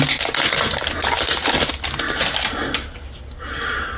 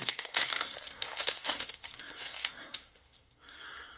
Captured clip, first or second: first